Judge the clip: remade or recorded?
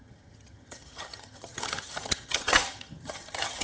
remade